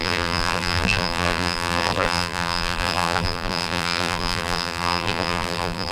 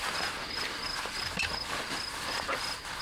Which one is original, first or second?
second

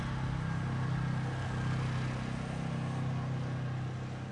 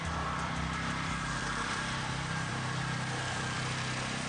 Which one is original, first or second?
first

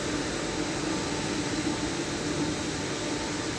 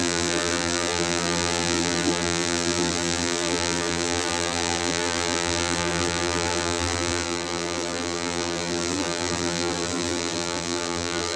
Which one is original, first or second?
first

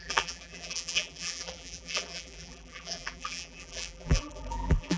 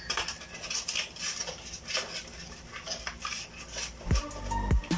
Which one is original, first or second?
second